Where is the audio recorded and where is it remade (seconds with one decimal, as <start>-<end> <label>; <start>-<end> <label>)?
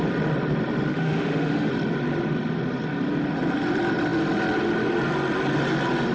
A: 0.0-0.9 recorded; 0.9-1.7 remade; 1.7-6.1 recorded